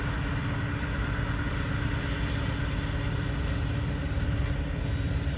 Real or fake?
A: real